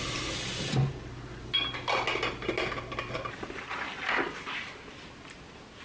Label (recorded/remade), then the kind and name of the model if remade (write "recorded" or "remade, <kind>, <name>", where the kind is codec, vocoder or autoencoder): recorded